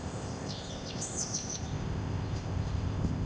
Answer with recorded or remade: remade